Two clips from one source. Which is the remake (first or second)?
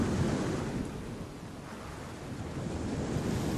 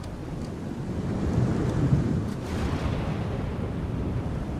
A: second